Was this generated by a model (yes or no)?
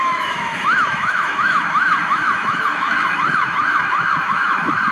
yes